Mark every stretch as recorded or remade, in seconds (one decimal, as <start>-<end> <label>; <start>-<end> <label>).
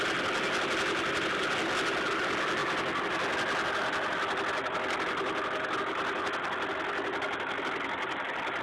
0.0-8.6 recorded